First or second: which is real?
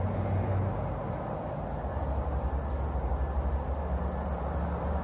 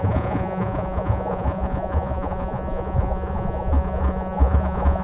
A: first